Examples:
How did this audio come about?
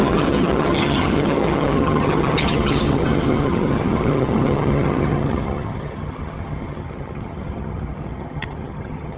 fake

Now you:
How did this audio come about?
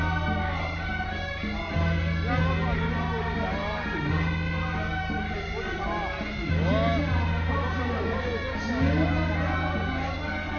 real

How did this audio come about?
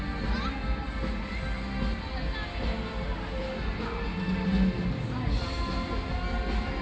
real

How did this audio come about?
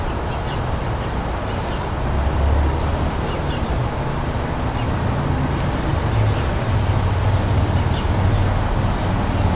real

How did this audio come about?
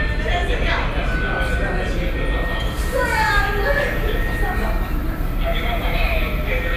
real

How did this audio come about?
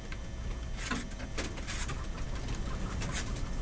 real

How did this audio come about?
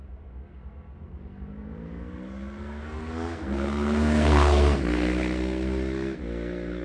fake